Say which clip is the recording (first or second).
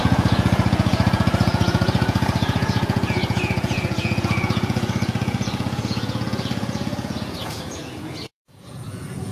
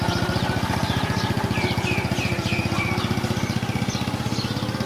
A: second